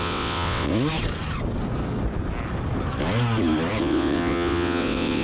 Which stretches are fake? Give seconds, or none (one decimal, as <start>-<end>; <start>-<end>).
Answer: 0.0-0.7; 3.8-5.2